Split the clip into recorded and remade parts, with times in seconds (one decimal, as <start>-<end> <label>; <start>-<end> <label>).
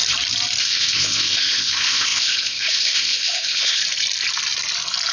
0.0-0.6 recorded; 0.6-3.8 remade; 3.8-5.1 recorded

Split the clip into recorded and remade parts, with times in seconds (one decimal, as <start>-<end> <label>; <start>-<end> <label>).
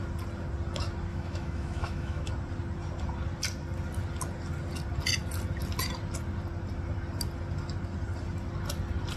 0.0-1.1 recorded; 1.1-2.3 remade; 2.3-9.2 recorded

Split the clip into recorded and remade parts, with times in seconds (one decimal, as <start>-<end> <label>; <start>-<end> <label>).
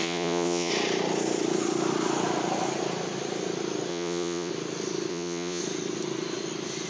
0.0-0.7 remade; 0.7-3.9 recorded; 3.9-4.5 remade; 4.5-5.1 recorded; 5.1-5.6 remade; 5.6-6.9 recorded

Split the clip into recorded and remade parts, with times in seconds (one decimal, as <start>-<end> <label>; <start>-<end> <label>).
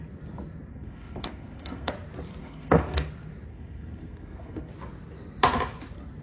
0.0-0.7 recorded; 0.7-1.9 remade; 1.9-2.4 recorded; 2.4-3.1 remade; 3.1-3.5 recorded; 3.5-4.7 remade; 4.7-6.2 recorded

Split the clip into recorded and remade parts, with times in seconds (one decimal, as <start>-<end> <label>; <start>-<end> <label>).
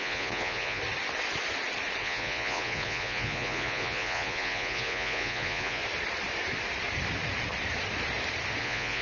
0.0-0.8 remade; 0.8-2.0 recorded; 2.0-5.8 remade; 5.8-8.6 recorded; 8.6-9.0 remade